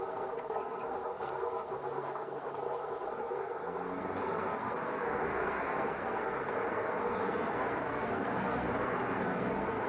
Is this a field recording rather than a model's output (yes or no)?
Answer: no